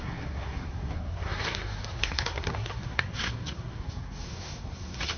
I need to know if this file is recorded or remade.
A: remade